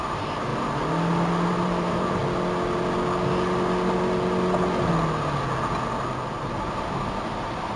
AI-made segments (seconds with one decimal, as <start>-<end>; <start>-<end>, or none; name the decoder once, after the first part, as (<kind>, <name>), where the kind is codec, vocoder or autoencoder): 0.0-0.5 (vocoder, BigVGAN v2); 1.5-2.2; 6.4-7.8